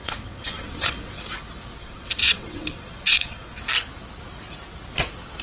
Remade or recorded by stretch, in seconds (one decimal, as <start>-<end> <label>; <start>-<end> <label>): 0.0-1.2 remade; 1.2-1.8 recorded; 1.8-3.6 remade; 3.6-5.4 recorded